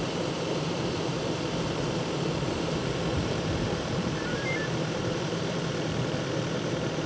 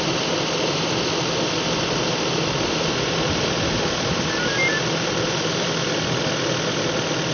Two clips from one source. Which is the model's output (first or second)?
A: first